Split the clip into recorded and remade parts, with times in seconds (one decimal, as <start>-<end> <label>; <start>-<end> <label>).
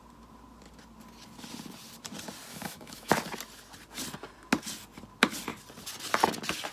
0.0-2.5 recorded; 2.5-3.1 remade; 3.1-6.7 recorded